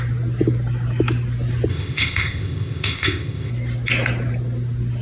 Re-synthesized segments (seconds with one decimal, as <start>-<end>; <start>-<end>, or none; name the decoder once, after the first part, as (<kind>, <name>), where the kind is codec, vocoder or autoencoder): 1.7-3.5 (codec, ZipCodec)